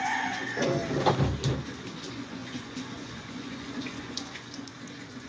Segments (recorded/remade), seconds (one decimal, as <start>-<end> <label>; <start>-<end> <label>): 0.0-0.8 remade; 0.8-1.9 recorded; 1.9-5.3 remade